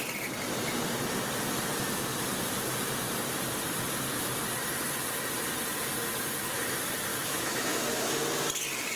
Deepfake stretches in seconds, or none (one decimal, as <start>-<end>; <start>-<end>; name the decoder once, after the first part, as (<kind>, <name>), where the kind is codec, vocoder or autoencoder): 7.1-8.1 (autoencoder, DAC-VAE)